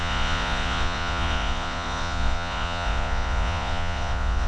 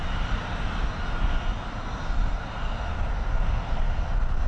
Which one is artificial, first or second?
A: first